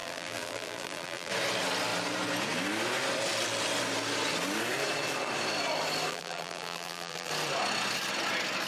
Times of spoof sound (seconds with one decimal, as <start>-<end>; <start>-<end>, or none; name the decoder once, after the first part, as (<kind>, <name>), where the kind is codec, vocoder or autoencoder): 0.0-1.3 (vocoder, BigVGAN v2); 6.1-7.3